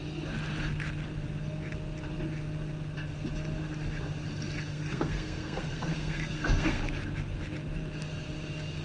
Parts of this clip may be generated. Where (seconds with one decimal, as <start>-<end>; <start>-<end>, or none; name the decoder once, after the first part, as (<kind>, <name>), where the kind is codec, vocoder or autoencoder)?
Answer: 4.7-6.8 (codec, SNAC)

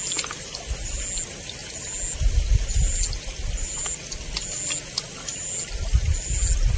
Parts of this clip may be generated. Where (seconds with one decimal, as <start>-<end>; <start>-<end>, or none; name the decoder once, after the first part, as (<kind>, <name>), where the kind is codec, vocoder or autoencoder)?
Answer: none

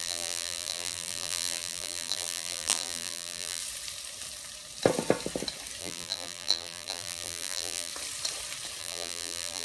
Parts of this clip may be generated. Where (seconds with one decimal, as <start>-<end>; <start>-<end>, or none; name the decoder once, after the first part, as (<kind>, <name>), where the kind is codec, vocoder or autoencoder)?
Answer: 0.0-3.6 (vocoder, BigVGAN v2); 5.8-7.9; 8.8-9.6

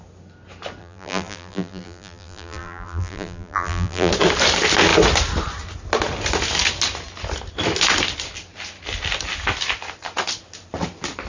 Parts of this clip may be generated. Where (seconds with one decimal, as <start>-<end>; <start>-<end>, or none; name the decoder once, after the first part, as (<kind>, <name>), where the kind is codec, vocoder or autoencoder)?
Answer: 0.8-4.1 (vocoder, BigVGAN v2)

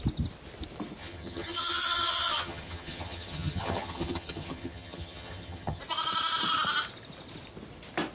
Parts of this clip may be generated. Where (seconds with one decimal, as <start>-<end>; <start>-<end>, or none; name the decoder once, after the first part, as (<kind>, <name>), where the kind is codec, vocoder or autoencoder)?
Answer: 1.0-5.8 (vocoder, HiFi-GAN)

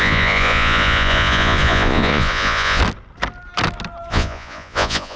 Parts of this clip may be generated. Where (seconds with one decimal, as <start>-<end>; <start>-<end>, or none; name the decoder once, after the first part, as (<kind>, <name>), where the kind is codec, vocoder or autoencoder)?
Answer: 0.0-2.8 (vocoder, Vocos); 4.1-5.2